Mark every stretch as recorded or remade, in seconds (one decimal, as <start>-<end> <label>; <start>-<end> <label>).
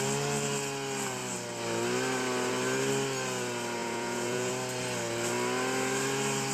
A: 0.0-3.8 recorded; 3.8-4.5 remade; 4.5-6.5 recorded